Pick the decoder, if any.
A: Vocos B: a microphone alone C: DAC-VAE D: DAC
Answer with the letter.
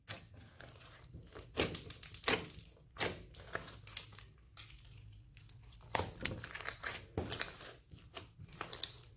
B